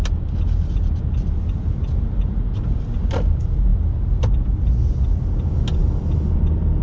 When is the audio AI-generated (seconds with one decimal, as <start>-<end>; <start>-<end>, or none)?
none